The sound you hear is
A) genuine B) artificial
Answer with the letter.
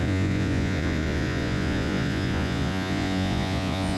B